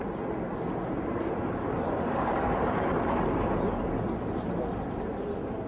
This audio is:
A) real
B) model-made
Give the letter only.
A